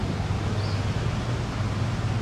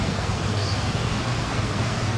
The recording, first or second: first